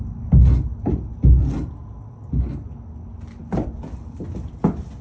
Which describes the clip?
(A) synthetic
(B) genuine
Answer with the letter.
B